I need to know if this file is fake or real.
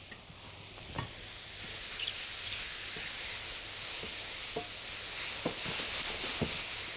real